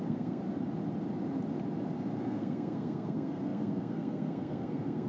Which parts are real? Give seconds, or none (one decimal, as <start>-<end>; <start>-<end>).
0.4-2.2